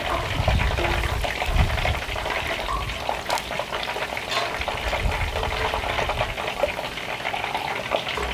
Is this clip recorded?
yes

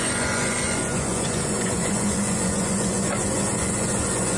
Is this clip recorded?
no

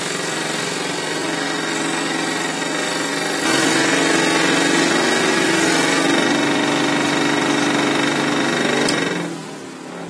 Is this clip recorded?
yes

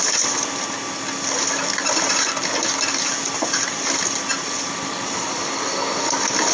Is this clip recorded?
yes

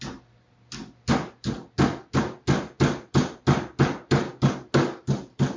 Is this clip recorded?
yes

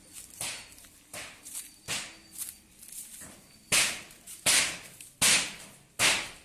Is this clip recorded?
yes